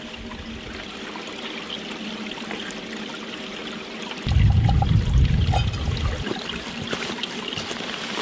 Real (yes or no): yes